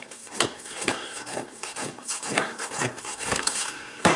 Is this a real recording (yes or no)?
no